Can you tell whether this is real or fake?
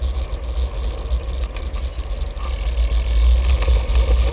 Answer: real